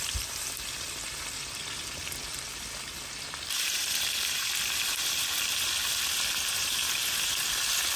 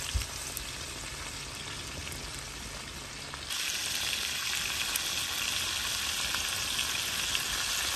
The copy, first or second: first